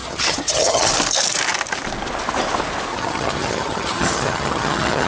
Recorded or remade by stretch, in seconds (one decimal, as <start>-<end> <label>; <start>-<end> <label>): 0.0-0.9 remade; 0.9-2.9 recorded; 2.9-5.1 remade

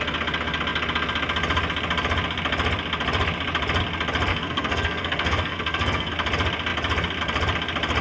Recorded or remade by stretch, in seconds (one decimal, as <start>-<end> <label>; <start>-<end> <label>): 0.0-4.3 recorded; 4.3-6.1 remade; 6.1-8.0 recorded

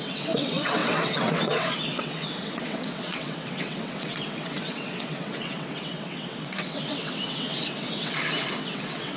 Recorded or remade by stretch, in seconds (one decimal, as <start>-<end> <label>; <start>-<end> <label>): 0.0-9.2 remade

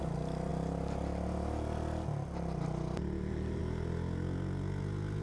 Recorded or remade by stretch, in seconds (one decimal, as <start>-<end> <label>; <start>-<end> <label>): 0.0-5.2 recorded

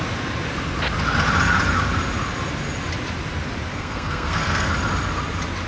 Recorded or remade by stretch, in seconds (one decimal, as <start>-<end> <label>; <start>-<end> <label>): 0.0-3.7 recorded; 3.7-4.7 remade; 4.7-5.7 recorded